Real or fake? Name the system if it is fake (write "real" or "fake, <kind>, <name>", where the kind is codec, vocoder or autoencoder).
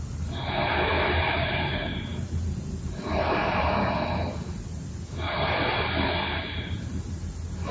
real